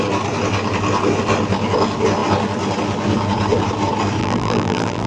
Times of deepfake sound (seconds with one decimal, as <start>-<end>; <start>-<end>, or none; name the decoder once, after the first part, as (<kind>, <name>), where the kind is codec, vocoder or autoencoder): 4.2-5.1 (vocoder, BigVGAN v2)